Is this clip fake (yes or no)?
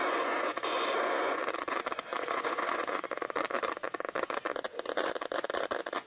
yes